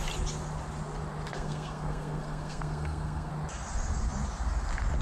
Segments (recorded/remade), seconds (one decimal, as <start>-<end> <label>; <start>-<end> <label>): 0.0-1.3 recorded; 1.3-3.3 remade; 3.3-5.0 recorded